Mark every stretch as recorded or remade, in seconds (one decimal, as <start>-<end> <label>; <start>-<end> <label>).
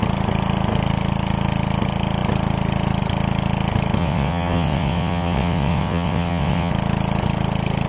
0.0-4.0 recorded; 4.0-6.7 remade; 6.7-7.9 recorded